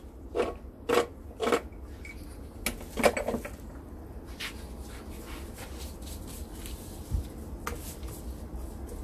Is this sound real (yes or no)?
yes